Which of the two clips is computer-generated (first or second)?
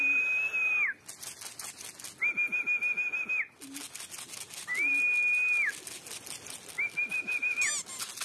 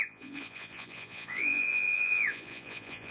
second